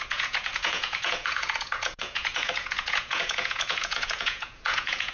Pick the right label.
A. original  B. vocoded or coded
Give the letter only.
B